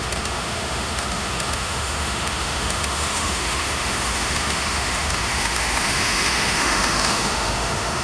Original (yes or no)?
no